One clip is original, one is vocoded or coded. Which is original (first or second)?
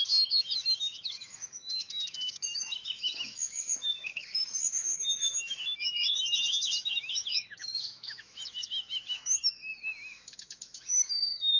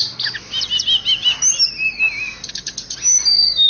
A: second